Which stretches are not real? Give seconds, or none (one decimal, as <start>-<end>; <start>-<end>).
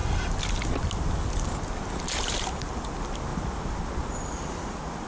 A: none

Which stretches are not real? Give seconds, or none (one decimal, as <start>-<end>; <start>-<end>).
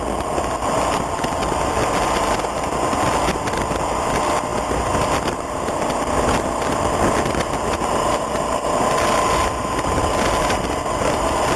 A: none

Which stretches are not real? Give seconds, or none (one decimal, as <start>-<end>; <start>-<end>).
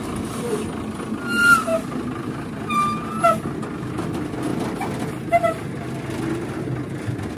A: none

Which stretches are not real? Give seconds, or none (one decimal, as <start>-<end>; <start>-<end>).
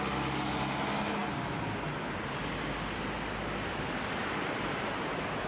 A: none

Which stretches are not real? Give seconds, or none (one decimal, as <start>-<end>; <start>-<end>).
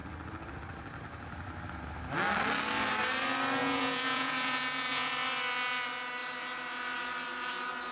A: 3.6-5.1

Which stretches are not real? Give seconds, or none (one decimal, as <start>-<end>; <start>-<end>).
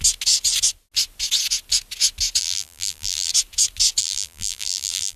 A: 2.4-3.3; 4.0-5.2